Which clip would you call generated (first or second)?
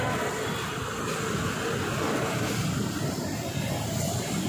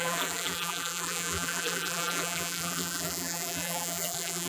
second